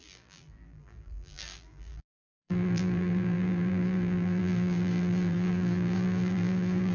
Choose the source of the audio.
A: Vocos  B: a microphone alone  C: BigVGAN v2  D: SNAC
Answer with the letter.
C